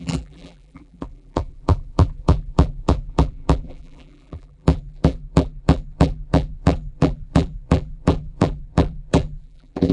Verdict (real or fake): fake